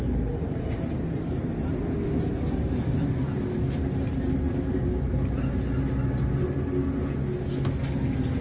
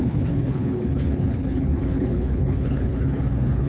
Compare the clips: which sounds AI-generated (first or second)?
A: second